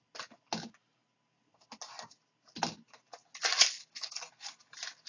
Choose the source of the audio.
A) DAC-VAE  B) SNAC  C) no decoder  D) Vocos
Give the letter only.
C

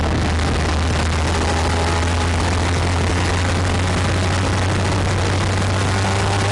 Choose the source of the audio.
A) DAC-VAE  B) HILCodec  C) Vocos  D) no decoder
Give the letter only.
D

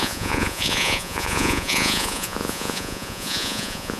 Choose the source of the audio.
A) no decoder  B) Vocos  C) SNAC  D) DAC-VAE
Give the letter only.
B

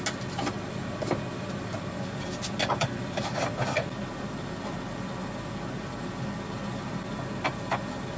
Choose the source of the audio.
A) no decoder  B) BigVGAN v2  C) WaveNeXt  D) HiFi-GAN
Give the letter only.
A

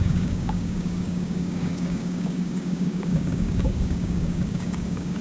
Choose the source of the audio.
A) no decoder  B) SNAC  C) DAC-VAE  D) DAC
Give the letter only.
D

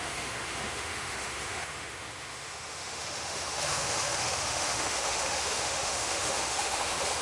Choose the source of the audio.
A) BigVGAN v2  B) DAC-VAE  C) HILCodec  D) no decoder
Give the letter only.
B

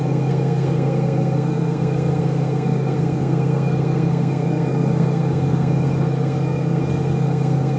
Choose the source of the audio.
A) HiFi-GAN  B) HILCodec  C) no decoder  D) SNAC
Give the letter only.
D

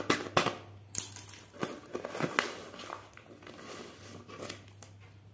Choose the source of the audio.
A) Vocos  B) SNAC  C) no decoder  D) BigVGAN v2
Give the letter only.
C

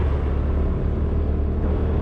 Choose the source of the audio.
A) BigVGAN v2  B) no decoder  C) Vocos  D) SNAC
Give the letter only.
B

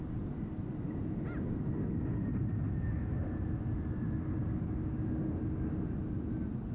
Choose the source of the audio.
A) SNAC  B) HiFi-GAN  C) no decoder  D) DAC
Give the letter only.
C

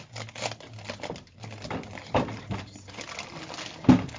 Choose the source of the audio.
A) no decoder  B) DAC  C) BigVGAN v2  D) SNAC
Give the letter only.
A